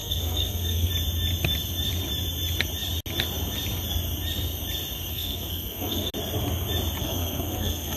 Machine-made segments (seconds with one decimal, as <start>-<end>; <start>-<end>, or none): 0.0-0.9; 5.1-6.1; 7.0-8.0